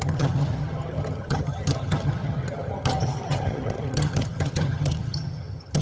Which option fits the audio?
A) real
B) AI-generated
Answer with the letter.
B